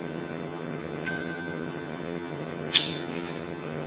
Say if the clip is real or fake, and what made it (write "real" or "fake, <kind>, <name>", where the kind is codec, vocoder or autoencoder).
fake, vocoder, HiFi-GAN